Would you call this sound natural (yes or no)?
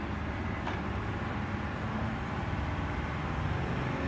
yes